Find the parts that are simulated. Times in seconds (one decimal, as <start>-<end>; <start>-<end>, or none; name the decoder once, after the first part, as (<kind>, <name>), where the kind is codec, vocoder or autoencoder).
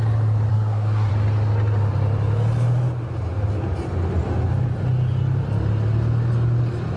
0.5-1.1 (codec, SNAC)